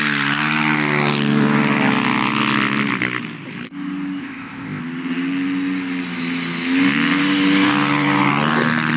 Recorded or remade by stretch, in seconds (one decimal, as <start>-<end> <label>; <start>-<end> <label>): 0.0-4.2 recorded; 4.2-4.8 remade; 4.8-9.0 recorded